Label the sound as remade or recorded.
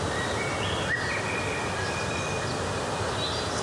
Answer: recorded